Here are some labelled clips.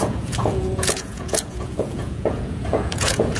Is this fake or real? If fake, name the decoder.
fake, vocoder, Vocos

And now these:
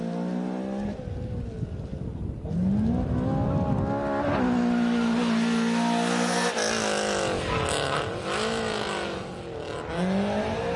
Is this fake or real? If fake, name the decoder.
real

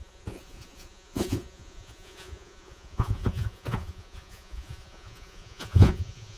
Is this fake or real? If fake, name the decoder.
fake, vocoder, Vocos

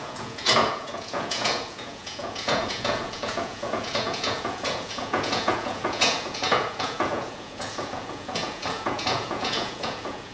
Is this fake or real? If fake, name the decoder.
fake, vocoder, Vocos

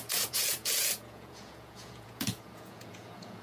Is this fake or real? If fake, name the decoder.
fake, vocoder, Vocos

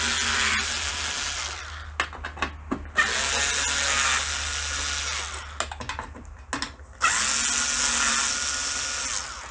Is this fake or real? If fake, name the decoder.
real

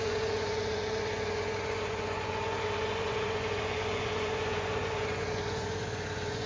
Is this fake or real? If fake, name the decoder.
fake, vocoder, Vocos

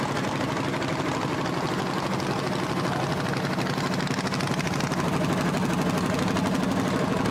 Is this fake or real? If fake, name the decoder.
real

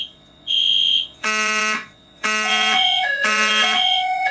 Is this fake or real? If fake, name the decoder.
fake, vocoder, Vocos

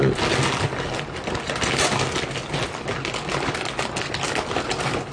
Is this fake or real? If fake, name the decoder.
real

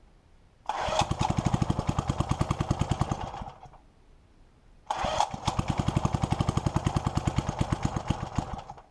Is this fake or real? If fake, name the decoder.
real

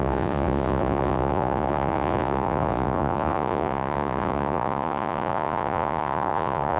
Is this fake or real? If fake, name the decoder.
fake, vocoder, Vocos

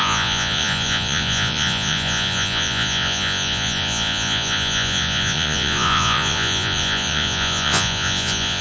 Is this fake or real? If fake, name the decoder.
fake, vocoder, Vocos